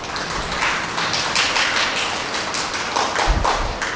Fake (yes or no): no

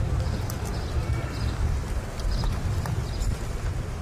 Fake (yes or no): no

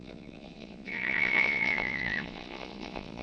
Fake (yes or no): yes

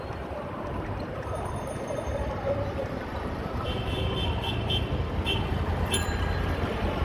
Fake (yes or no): yes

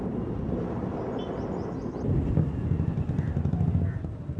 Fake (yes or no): no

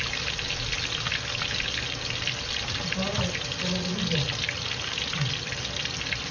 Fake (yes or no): no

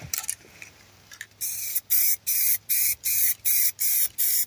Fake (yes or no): yes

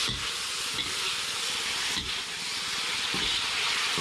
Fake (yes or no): no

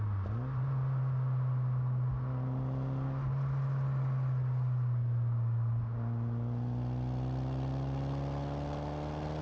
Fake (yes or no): no